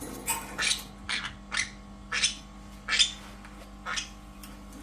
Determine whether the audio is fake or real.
real